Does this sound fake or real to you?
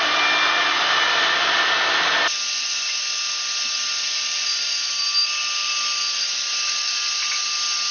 real